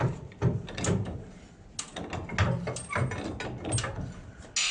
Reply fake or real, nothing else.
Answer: real